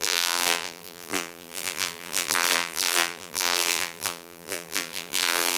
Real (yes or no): no